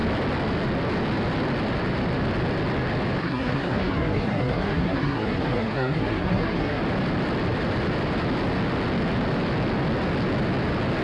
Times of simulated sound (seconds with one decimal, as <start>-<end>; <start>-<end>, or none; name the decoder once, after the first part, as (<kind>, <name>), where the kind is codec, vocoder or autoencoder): 3.2-6.8 (codec, SNAC)